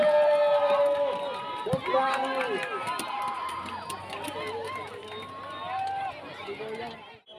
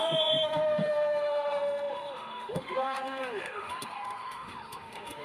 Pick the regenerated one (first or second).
second